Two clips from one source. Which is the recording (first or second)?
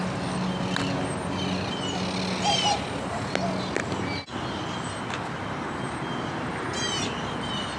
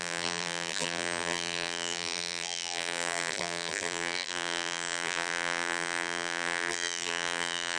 first